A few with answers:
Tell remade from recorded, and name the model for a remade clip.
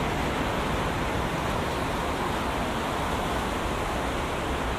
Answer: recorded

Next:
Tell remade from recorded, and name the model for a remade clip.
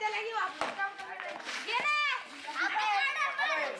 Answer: recorded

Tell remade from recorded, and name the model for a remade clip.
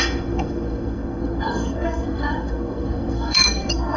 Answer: remade, codec, SNAC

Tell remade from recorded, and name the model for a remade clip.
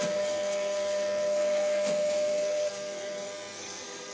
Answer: remade, codec, SNAC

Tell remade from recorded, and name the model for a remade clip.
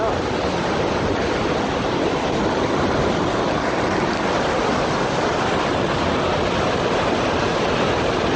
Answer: recorded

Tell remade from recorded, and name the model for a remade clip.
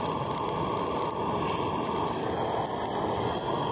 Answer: recorded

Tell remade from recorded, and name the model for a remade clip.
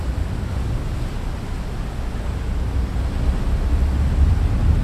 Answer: recorded